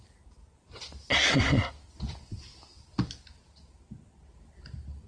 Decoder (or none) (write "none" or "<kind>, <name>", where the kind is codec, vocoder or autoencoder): none